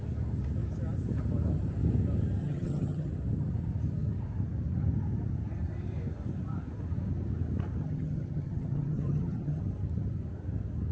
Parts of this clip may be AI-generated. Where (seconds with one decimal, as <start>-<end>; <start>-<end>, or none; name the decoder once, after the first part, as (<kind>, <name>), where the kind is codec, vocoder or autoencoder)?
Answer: 2.4-3.1 (vocoder, HiFi-GAN); 7.8-9.6

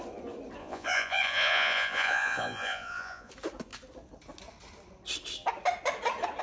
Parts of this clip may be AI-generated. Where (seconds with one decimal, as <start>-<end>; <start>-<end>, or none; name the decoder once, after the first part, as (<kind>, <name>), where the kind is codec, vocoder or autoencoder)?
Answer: 0.6-3.3 (vocoder, Vocos)

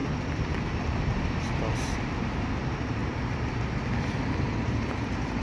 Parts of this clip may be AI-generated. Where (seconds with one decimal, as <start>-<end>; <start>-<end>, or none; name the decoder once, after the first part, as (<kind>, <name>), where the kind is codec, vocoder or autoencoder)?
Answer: 0.0-2.1 (vocoder, BigVGAN v2); 3.0-5.4

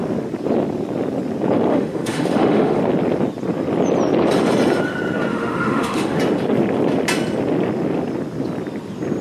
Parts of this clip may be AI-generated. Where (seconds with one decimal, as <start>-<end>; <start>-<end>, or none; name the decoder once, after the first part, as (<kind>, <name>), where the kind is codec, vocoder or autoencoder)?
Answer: 1.7-2.8 (autoencoder, DAC-VAE); 5.3-6.2

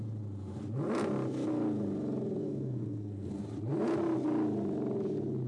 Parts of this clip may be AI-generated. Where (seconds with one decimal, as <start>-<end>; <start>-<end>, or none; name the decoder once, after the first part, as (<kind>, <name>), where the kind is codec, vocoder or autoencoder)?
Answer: 2.4-3.3 (codec, SNAC)